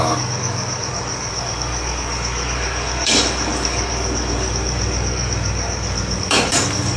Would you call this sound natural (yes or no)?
no